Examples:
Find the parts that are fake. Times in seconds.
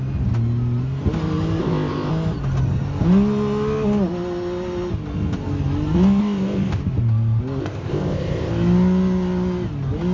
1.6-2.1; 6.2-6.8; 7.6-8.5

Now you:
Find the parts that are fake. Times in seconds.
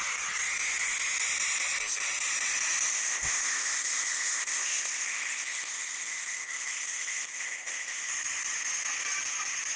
2.9-8.1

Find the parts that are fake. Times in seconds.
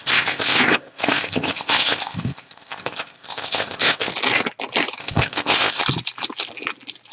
0.0-4.1; 5.0-5.8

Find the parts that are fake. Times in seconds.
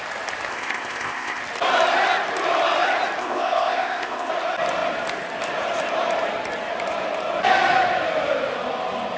0.5-1.4; 3.2-4.3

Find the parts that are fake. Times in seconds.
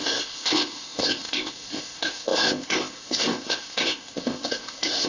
0.0-5.1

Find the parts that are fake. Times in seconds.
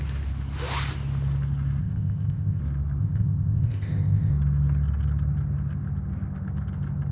1.8-2.6; 3.0-4.3